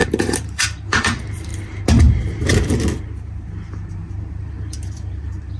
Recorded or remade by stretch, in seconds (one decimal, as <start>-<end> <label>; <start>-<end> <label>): 0.0-1.5 remade; 1.5-3.9 recorded; 3.9-5.6 remade